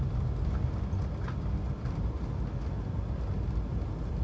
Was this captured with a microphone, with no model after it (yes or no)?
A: yes